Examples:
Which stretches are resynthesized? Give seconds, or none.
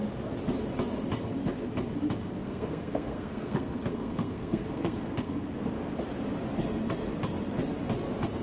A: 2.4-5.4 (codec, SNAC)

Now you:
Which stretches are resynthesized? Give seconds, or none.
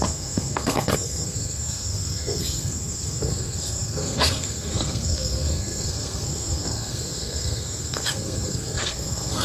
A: 0.0-9.4 (codec, SNAC)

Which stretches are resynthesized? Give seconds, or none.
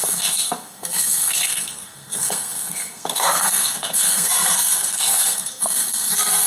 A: 0.0-6.5 (codec, SNAC)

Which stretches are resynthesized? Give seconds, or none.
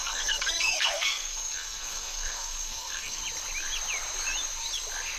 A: 0.0-3.2 (codec, SNAC)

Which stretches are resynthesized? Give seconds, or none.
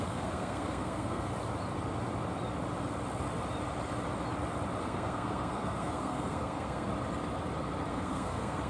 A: 0.0-1.3 (codec, SNAC); 4.8-6.9; 7.9-8.7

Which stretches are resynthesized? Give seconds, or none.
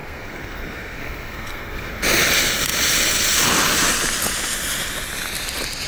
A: 0.0-1.9 (codec, SNAC)